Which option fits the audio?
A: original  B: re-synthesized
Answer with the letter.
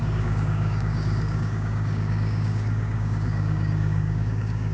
B